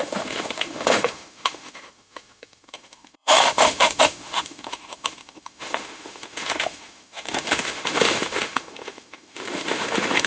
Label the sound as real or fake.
fake